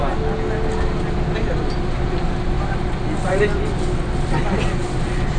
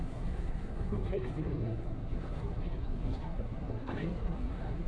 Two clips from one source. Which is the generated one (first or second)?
second